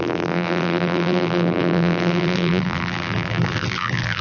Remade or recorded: remade